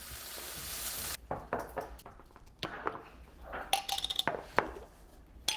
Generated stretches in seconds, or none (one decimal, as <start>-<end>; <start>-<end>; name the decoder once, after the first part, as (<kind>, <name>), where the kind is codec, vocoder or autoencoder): none